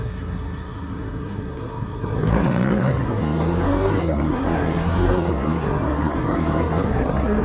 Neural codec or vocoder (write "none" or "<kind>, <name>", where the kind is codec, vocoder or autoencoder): codec, SNAC